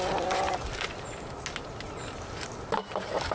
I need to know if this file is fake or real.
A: real